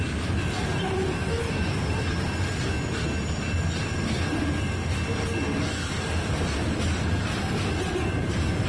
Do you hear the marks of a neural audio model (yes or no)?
no